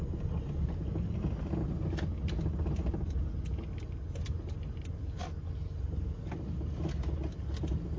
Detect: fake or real real